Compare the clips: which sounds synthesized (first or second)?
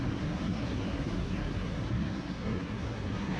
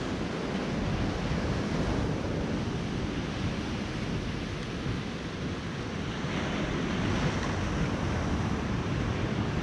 first